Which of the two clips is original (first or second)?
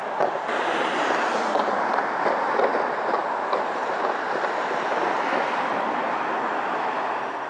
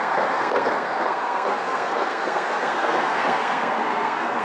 first